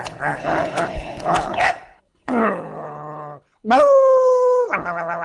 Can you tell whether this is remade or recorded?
remade